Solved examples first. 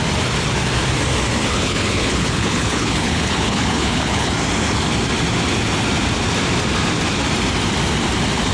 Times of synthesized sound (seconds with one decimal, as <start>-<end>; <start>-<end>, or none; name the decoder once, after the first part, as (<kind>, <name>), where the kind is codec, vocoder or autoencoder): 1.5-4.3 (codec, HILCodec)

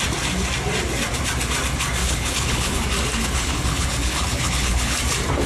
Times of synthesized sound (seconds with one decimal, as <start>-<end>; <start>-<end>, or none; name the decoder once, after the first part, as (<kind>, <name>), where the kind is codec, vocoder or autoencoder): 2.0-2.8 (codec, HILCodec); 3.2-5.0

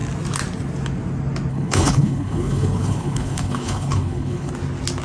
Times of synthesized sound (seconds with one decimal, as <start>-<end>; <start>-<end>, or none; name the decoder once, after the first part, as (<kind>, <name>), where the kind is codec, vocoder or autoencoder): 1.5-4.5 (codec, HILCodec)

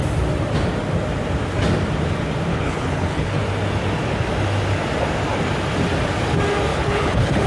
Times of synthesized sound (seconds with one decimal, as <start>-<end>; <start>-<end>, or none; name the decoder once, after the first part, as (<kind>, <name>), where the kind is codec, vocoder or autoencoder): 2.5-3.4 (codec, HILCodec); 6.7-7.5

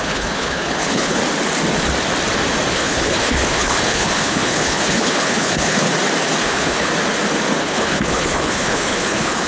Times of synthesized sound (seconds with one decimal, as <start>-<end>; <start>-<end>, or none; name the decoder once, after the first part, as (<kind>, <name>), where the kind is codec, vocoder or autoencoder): 0.0-1.2 (codec, HILCodec); 2.7-5.9; 6.4-6.9; 7.6-9.5

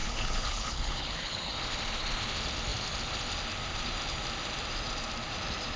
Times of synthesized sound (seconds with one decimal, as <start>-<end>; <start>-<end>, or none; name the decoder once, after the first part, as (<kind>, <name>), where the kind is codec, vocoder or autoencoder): 0.0-1.5 (codec, HILCodec)